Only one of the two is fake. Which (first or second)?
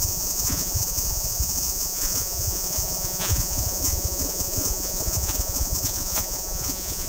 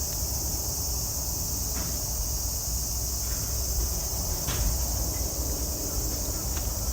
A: first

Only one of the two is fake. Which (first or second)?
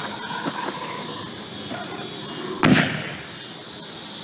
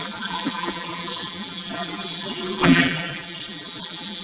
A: second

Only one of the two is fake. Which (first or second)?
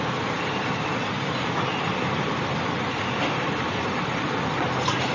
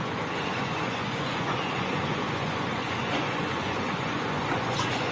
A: second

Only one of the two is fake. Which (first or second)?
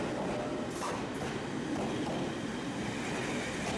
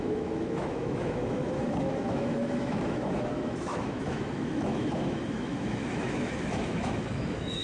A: second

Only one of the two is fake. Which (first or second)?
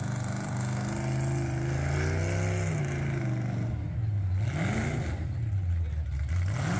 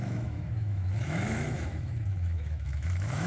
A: second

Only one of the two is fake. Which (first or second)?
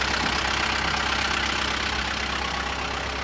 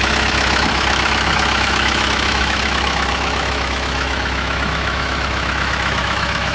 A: second